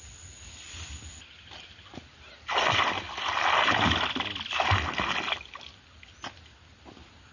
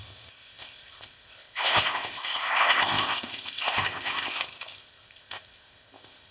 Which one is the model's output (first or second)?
second